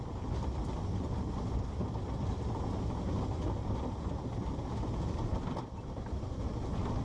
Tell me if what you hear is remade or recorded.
recorded